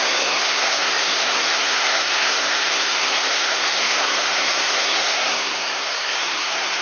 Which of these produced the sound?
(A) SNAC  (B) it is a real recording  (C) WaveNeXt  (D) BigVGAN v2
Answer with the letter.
A